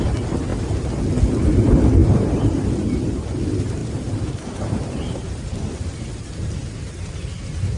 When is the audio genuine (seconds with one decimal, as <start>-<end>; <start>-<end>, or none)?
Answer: 0.0-2.0; 3.4-3.8; 5.3-7.8